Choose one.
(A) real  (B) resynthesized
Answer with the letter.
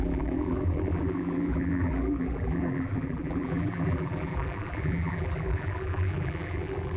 B